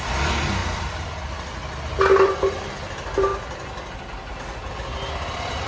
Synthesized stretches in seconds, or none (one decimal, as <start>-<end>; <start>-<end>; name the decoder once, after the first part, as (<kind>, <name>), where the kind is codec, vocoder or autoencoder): none